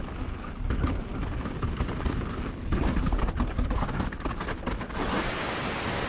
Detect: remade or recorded remade